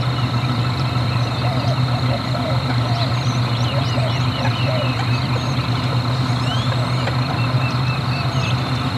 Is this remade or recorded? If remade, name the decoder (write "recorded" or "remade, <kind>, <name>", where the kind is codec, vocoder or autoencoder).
remade, vocoder, BigVGAN v2